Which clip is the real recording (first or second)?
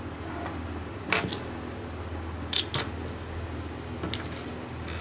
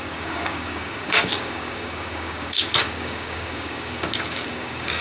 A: first